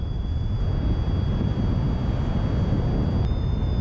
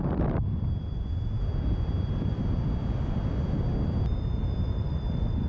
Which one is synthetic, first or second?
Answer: second